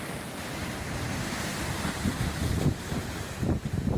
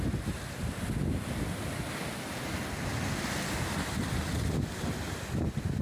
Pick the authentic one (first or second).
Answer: second